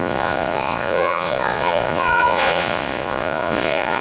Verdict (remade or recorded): remade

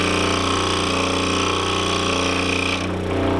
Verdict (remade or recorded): recorded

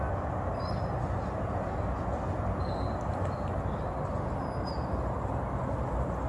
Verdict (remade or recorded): recorded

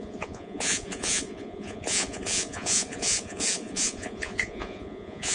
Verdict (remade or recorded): remade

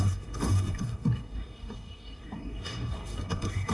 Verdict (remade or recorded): remade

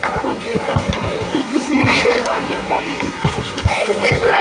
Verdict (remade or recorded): remade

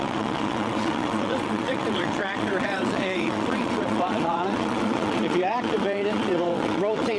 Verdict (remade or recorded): remade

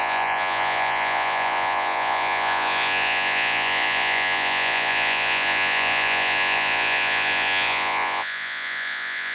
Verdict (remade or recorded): remade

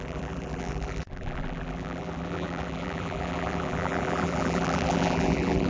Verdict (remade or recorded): remade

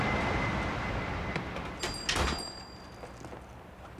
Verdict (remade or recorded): recorded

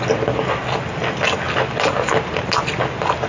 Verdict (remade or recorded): recorded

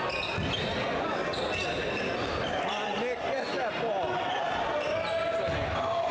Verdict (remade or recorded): recorded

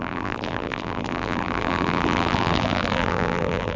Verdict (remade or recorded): remade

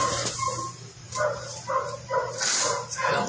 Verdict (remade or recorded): recorded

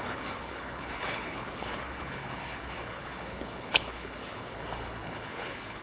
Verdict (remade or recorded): remade